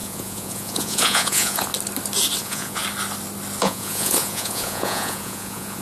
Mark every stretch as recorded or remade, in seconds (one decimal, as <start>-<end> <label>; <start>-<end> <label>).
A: 0.0-1.7 remade; 1.7-2.4 recorded; 2.4-2.8 remade; 2.8-3.6 recorded; 3.6-5.8 remade